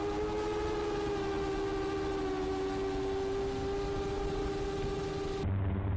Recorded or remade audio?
recorded